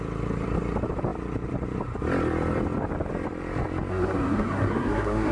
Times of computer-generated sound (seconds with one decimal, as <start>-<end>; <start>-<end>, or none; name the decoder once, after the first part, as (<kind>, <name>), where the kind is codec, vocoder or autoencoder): 3.9-5.3 (codec, SNAC)

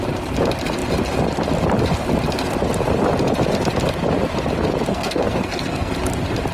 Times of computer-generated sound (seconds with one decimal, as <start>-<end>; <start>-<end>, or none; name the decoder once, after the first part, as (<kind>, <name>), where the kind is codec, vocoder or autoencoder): 4.9-5.9 (codec, SNAC)

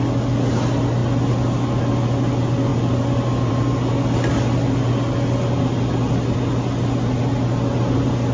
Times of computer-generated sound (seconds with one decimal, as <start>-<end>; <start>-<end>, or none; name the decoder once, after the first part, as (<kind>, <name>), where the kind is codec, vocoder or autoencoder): none

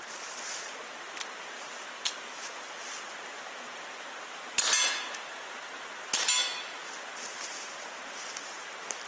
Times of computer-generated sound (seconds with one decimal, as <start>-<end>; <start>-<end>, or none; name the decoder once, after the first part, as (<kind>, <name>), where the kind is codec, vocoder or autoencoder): none

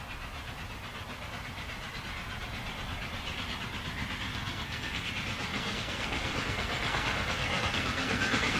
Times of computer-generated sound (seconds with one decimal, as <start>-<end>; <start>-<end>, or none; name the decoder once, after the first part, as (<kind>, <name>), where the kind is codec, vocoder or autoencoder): 4.3-5.1 (codec, SNAC); 5.5-8.6

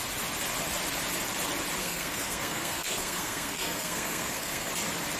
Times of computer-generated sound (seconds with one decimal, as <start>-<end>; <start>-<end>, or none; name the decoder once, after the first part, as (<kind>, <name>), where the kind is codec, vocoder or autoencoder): 1.8-4.7 (codec, SNAC)

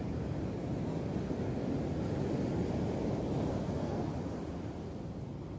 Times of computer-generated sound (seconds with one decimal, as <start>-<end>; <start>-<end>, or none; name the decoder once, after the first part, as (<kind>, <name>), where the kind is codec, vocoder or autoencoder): 3.5-4.1 (codec, SNAC)